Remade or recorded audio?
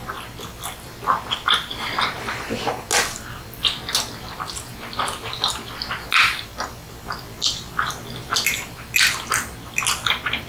recorded